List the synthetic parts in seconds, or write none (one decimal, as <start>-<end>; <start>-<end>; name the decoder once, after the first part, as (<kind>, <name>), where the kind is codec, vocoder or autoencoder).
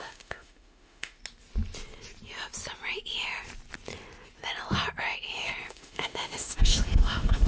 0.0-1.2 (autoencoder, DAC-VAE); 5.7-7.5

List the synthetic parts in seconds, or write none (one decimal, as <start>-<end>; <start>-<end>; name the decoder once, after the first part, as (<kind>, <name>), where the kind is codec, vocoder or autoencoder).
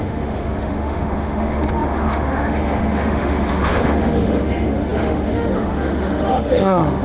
0.0-7.0 (autoencoder, DAC-VAE)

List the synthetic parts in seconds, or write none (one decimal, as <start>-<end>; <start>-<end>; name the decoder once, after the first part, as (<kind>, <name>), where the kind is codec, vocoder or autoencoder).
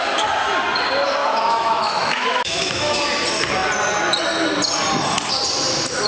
1.2-3.0 (autoencoder, DAC-VAE)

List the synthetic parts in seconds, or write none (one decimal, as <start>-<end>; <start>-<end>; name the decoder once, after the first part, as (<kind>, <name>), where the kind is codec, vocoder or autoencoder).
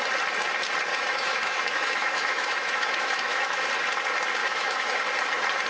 0.9-3.7 (autoencoder, DAC-VAE); 4.4-5.0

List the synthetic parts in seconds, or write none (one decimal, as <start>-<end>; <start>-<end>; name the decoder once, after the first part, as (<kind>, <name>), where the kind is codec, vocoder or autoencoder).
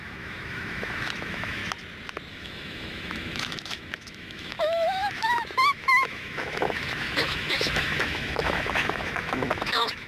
0.0-1.6 (autoencoder, DAC-VAE); 2.3-10.1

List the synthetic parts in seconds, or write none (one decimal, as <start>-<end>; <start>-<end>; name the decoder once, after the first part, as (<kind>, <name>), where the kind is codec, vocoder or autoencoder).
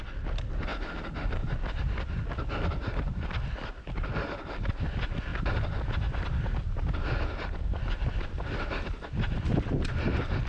none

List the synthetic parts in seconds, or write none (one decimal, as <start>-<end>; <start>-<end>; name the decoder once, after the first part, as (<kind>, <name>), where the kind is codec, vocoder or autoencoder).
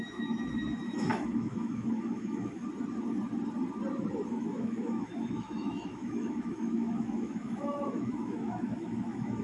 0.0-2.6 (autoencoder, DAC-VAE); 4.3-9.4